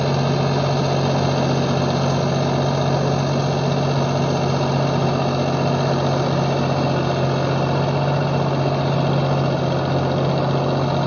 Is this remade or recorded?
recorded